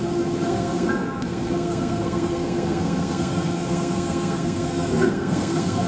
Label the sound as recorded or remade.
remade